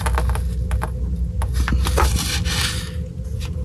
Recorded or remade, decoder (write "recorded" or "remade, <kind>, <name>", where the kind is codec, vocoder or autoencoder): recorded